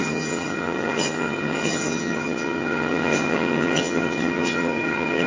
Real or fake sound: fake